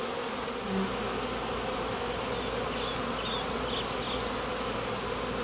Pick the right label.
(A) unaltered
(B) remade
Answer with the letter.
A